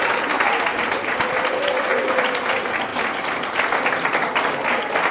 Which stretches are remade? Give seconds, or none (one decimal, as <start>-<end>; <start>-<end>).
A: 0.7-1.3